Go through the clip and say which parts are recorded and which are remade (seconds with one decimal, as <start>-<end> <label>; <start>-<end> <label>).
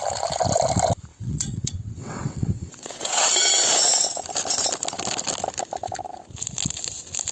0.0-1.1 recorded; 1.1-3.3 remade; 3.3-7.3 recorded